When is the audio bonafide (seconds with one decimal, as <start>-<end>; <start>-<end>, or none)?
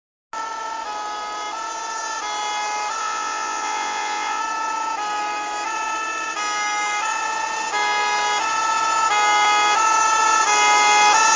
0.0-3.0; 4.4-11.4